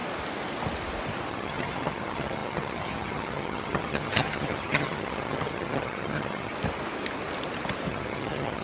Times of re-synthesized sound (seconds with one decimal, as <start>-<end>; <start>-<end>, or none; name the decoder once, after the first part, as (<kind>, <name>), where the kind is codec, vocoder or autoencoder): 1.3-6.5 (vocoder, HiFi-GAN); 7.9-8.6